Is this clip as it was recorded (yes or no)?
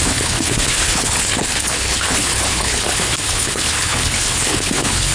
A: no